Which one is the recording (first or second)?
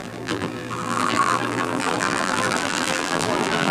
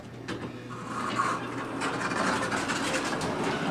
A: second